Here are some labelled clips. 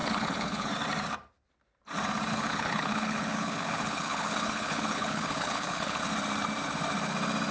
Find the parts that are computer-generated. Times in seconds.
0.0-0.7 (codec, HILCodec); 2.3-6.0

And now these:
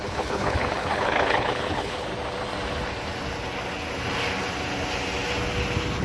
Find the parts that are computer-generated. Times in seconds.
0.0-2.1 (codec, HILCodec)

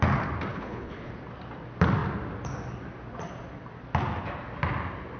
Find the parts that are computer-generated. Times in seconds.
0.5-1.1 (codec, HILCodec)

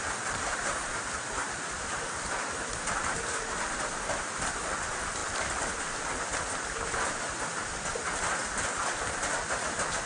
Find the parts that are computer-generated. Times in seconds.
none

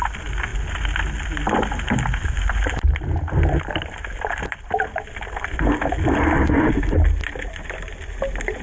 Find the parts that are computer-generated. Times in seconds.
none